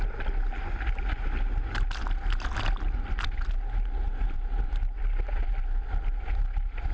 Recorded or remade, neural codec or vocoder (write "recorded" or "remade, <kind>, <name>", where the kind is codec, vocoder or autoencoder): recorded